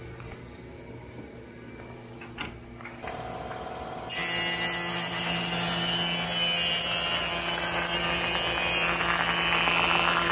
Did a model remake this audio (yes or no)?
no